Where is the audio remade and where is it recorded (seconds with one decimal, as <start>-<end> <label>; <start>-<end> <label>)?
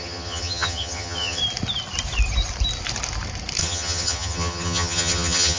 0.0-1.4 remade; 1.4-3.6 recorded; 3.6-5.6 remade